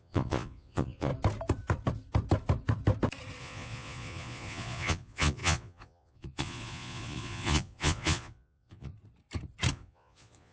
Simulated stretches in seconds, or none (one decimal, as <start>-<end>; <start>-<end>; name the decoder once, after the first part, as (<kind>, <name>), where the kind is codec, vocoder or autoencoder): 0.0-1.1 (vocoder, Vocos); 3.4-8.9; 9.7-10.5